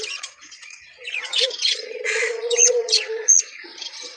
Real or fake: fake